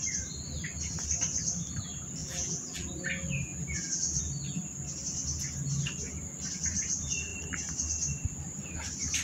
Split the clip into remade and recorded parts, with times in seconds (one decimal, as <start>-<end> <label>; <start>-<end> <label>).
0.0-2.2 recorded; 2.2-2.9 remade; 2.9-3.5 recorded; 3.5-4.2 remade; 4.2-9.2 recorded